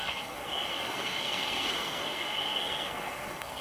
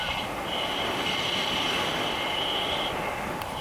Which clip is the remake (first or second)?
first